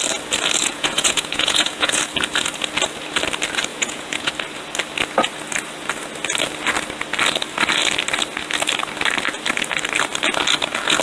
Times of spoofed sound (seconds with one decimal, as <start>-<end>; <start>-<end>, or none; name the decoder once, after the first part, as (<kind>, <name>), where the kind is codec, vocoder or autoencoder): 0.6-2.0 (vocoder, Vocos); 3.7-4.3